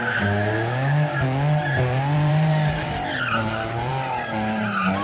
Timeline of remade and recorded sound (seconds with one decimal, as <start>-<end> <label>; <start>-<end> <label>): 0.0-2.3 recorded; 2.3-3.9 remade; 3.9-5.0 recorded